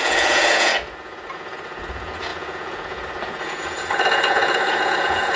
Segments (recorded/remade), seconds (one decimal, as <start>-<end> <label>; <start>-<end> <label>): 0.0-5.4 remade